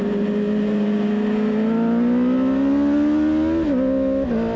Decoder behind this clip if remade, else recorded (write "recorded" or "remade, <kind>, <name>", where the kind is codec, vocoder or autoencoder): recorded